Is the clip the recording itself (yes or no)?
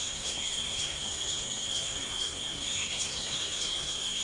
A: no